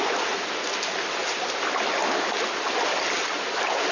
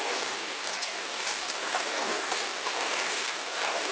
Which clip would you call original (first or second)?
first